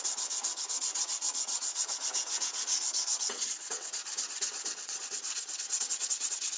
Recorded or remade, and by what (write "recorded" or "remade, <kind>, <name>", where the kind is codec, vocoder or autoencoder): remade, vocoder, WaveNeXt